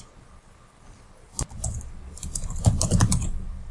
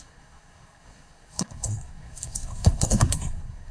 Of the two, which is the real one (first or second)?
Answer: first